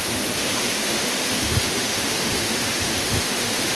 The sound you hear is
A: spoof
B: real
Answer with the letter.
A